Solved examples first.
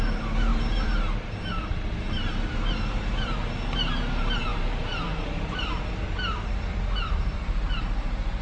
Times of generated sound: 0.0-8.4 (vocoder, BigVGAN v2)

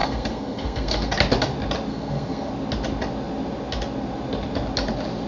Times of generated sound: 0.0-1.1 (codec, SNAC); 1.9-2.5

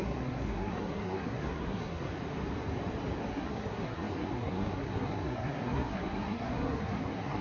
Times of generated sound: 0.0-2.2 (codec, SNAC); 3.3-7.4

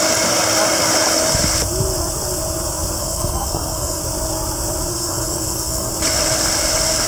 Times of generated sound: 3.0-4.0 (codec, SNAC); 4.9-5.9

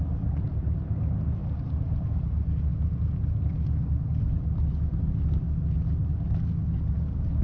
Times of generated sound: none

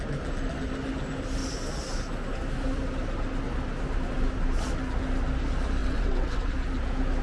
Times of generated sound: 5.8-6.5 (vocoder, WaveNeXt)

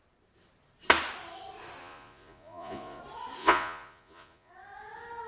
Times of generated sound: 1.8-3.0 (vocoder, Vocos); 3.4-4.5